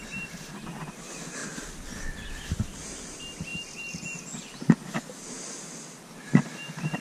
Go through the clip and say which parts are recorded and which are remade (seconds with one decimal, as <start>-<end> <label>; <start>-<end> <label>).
0.0-7.0 recorded